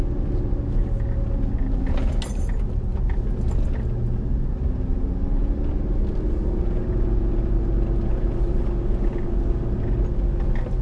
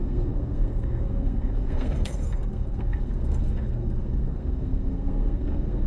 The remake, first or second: second